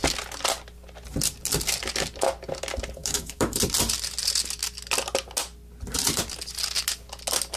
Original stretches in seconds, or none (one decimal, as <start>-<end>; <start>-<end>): 0.0-3.0; 3.6-7.6